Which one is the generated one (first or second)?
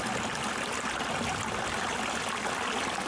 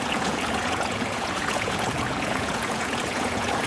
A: second